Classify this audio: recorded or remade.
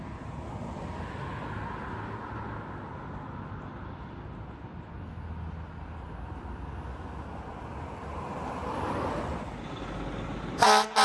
recorded